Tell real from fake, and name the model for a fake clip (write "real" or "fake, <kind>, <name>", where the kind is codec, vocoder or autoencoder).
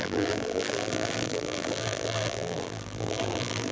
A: fake, vocoder, BigVGAN v2